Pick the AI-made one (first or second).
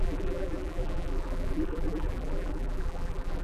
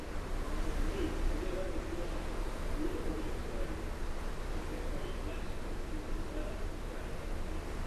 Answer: first